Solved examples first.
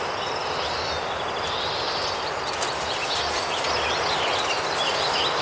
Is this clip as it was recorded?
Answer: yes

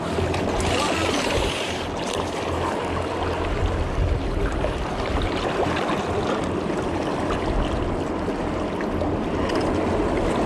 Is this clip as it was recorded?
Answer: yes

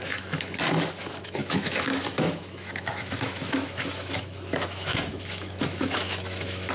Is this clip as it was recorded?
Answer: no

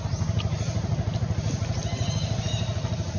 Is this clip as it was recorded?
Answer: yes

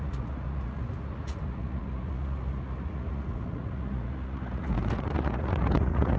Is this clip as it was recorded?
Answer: no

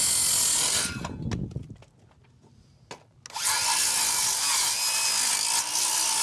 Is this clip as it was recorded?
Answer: yes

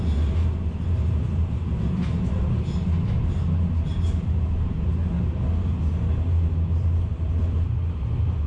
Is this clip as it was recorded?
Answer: yes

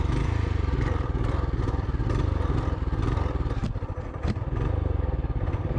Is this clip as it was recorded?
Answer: yes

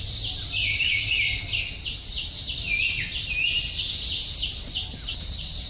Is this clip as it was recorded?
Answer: yes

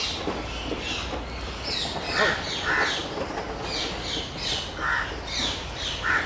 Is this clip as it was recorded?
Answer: yes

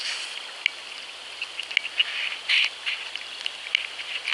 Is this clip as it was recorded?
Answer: yes